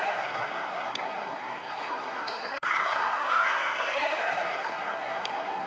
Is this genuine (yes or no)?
no